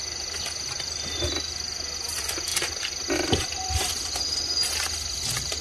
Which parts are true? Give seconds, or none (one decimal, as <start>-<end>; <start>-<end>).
0.0-5.6